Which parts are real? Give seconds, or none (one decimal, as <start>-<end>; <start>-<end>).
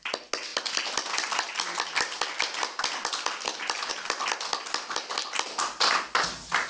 0.0-6.7